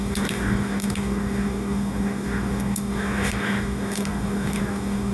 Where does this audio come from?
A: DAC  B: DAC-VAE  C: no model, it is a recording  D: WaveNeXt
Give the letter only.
A